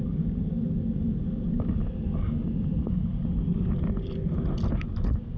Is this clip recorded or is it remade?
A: recorded